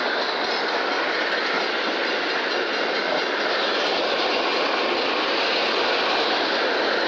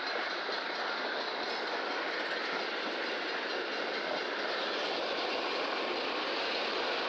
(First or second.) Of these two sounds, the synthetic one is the second